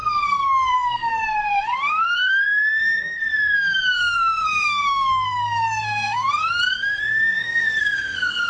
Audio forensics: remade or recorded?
remade